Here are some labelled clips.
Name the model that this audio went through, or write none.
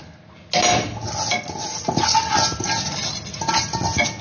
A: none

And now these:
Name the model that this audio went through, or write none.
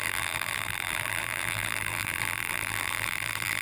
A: vocoder, BigVGAN v2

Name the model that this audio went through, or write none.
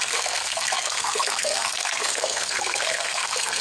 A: codec, SNAC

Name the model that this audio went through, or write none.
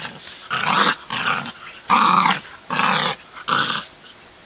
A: none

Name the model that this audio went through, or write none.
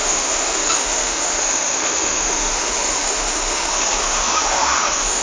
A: autoencoder, DAC-VAE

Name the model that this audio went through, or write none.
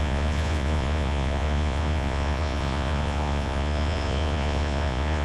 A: vocoder, Vocos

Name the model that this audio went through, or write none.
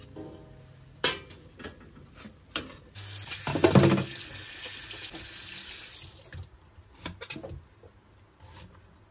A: none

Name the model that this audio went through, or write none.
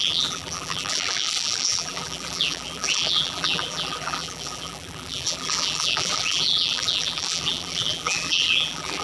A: vocoder, BigVGAN v2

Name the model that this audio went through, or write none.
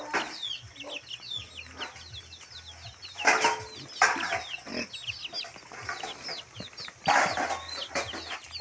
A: none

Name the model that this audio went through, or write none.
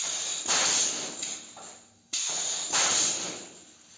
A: none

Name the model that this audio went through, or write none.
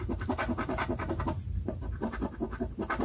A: none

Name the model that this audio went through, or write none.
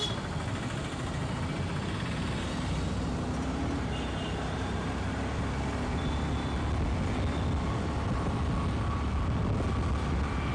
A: none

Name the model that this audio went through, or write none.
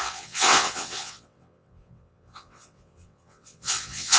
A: vocoder, WaveNeXt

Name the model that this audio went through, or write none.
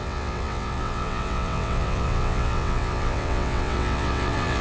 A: vocoder, WaveNeXt